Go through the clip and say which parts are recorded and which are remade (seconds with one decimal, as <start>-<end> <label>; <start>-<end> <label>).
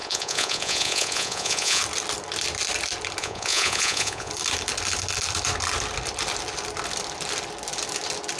0.0-1.8 remade; 1.8-3.2 recorded; 3.2-4.3 remade; 4.3-8.4 recorded